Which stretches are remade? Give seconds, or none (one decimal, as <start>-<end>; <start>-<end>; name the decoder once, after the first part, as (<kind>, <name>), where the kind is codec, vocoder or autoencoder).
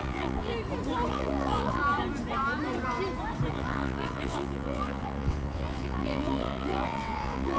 0.0-0.5 (vocoder, WaveNeXt); 1.1-1.8; 3.5-7.6